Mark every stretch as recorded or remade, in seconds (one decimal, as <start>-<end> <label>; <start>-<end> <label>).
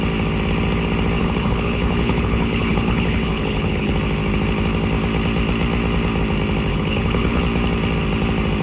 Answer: 0.0-1.2 recorded; 1.2-3.9 remade; 3.9-6.7 recorded; 6.7-7.4 remade; 7.4-8.6 recorded